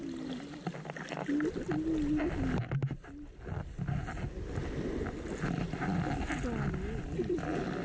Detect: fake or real real